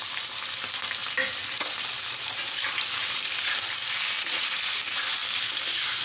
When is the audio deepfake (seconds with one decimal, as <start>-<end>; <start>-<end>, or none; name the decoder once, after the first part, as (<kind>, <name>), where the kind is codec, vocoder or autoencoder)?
1.0-3.7 (vocoder, BigVGAN v2); 4.2-4.8; 5.2-6.0